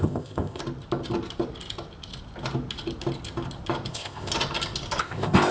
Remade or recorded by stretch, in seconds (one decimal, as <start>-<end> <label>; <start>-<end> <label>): 0.0-0.6 remade; 0.6-3.9 recorded; 3.9-4.3 remade; 4.3-5.0 recorded; 5.0-5.5 remade